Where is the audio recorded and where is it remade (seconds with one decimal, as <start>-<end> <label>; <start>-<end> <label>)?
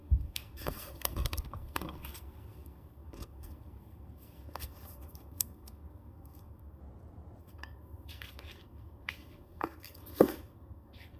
0.0-6.8 remade; 6.8-7.4 recorded; 7.4-11.2 remade